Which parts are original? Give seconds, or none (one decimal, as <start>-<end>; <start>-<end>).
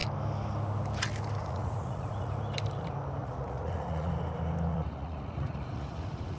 0.0-1.4; 2.3-3.2; 4.1-4.7